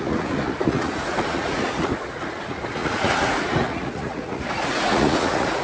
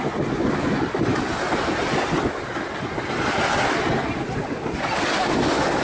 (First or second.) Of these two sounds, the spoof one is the first